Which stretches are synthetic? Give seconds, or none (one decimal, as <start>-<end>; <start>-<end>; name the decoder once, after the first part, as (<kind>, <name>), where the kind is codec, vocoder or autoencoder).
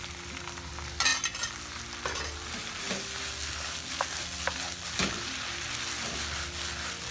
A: none